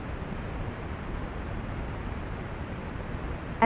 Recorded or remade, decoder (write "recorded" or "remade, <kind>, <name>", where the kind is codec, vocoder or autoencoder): recorded